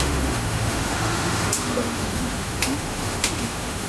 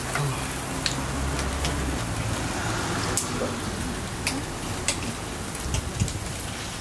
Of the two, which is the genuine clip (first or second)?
second